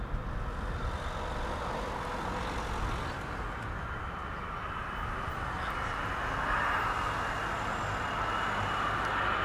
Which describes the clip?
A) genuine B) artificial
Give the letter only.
A